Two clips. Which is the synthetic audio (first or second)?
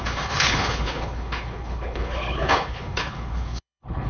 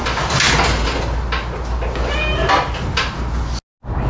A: first